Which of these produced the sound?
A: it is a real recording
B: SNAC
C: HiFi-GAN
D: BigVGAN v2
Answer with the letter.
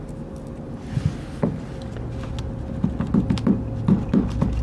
A